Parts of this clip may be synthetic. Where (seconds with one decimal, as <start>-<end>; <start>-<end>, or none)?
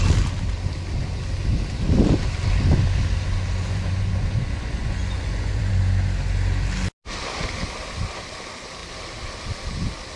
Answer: 3.6-5.7